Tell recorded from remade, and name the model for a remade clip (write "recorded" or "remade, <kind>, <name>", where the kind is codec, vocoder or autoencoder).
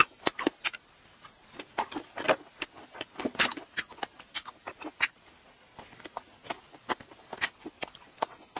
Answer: recorded